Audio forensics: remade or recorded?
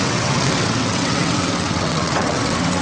remade